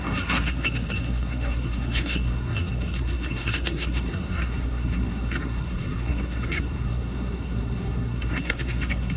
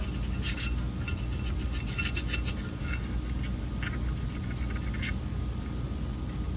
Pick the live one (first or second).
second